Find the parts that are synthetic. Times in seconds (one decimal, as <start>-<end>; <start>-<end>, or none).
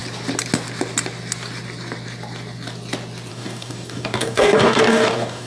3.3-5.5